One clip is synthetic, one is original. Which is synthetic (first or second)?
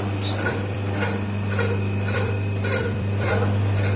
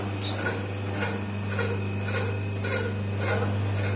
first